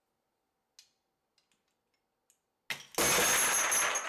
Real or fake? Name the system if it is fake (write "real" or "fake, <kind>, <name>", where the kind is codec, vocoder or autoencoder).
real